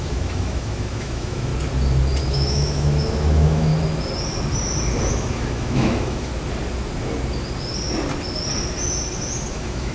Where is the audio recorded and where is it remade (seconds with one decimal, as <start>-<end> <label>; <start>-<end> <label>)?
0.0-1.5 remade; 1.5-2.2 recorded; 2.2-3.7 remade; 3.7-5.1 recorded; 5.1-6.3 remade; 6.3-9.5 recorded; 9.5-9.9 remade